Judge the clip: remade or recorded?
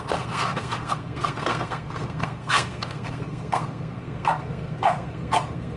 remade